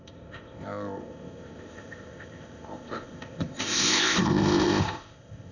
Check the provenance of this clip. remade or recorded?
remade